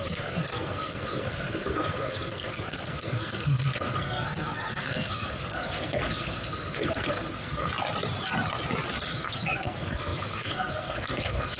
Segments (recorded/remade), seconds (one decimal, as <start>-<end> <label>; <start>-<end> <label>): 0.0-7.7 remade; 7.7-9.0 recorded; 9.0-11.6 remade